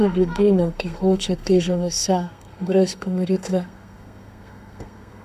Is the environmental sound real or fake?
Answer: fake